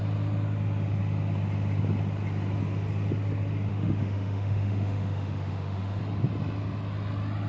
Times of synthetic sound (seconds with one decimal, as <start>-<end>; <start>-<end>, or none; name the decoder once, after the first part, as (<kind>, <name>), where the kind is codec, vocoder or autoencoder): 3.7-6.0 (autoencoder, DAC-VAE)